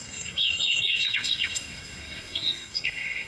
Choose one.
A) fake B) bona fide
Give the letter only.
A